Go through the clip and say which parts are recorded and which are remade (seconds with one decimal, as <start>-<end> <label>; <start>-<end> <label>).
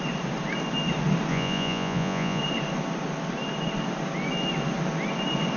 0.0-1.3 recorded; 1.3-2.4 remade; 2.4-5.6 recorded